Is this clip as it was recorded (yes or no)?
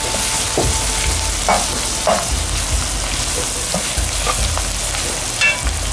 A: yes